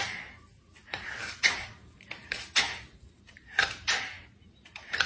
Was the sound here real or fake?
fake